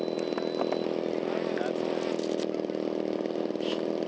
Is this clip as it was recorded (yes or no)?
yes